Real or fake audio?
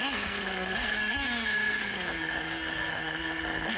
fake